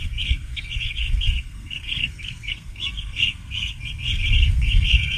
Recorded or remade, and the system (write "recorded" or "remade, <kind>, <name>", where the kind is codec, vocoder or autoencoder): remade, codec, SNAC